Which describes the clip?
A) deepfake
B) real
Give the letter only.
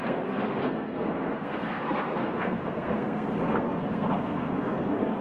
A